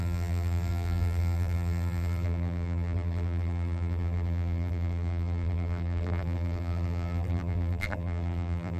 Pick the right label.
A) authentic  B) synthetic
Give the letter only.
B